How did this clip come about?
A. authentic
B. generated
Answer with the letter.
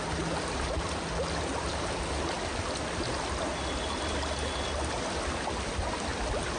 A